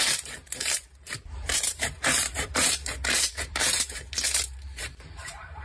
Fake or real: fake